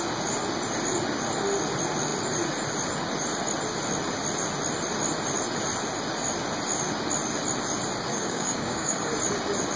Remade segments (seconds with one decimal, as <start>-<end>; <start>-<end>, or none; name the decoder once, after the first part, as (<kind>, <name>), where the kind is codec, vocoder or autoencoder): 8.1-9.1 (codec, DAC)